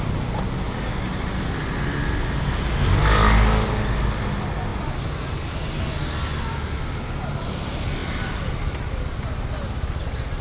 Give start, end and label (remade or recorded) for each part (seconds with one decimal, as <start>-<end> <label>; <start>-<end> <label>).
0.0-10.4 recorded